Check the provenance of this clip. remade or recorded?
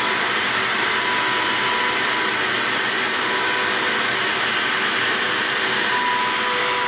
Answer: recorded